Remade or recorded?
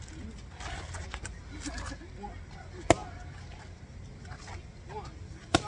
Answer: recorded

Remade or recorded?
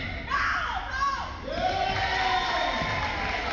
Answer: recorded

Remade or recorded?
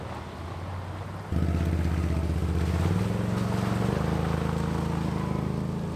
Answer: recorded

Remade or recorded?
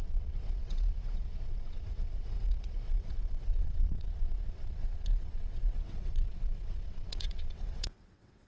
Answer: remade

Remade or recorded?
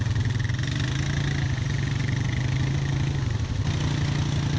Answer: recorded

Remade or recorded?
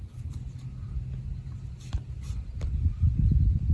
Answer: recorded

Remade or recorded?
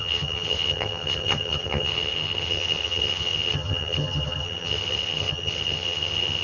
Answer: remade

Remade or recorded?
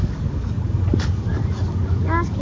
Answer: remade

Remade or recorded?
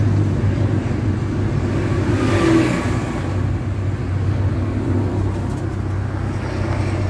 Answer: recorded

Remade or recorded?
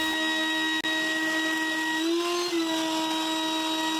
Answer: recorded